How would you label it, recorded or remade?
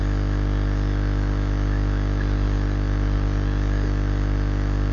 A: recorded